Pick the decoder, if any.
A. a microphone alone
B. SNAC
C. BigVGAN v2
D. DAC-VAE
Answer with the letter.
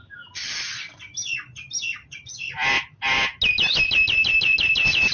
A